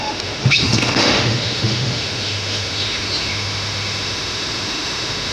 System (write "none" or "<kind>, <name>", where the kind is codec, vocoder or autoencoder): autoencoder, DAC-VAE